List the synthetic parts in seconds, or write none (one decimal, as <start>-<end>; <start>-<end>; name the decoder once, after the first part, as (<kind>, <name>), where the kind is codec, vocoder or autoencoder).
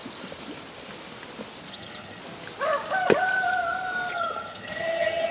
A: 1.7-2.2 (vocoder, HiFi-GAN); 4.1-5.3